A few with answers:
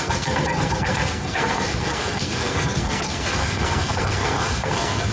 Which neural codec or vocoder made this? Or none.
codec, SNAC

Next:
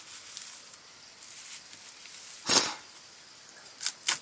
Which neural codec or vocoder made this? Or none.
none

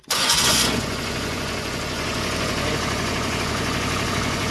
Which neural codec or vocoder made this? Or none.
vocoder, Vocos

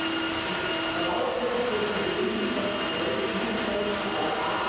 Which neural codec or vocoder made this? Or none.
none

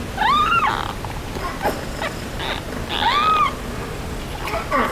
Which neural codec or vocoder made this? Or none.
none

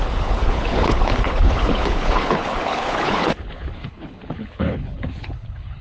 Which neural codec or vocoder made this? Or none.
codec, HILCodec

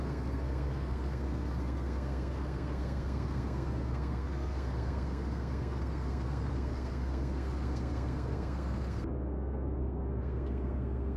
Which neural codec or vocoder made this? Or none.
codec, SNAC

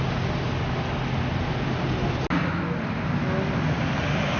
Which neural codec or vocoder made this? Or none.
none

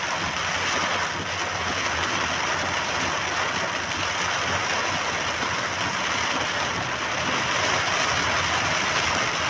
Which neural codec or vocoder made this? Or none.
none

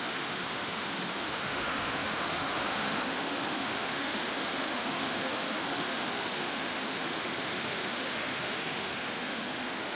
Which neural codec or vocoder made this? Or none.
autoencoder, DAC-VAE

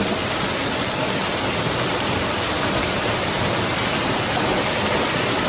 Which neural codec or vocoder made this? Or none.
none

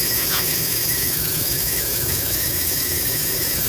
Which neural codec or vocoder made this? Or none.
autoencoder, DAC-VAE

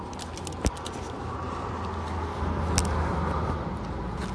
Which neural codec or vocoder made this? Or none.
none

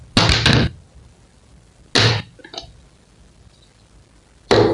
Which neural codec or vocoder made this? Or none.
none